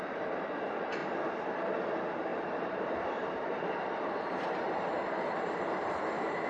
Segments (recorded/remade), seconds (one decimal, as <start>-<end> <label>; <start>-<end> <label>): 0.0-2.3 recorded; 2.3-5.9 remade; 5.9-6.5 recorded